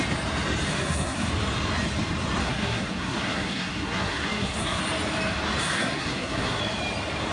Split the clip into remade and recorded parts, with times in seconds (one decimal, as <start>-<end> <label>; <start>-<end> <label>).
0.0-0.7 recorded; 0.7-1.3 remade; 1.3-2.4 recorded; 2.4-4.8 remade; 4.8-5.6 recorded; 5.6-6.6 remade; 6.6-7.3 recorded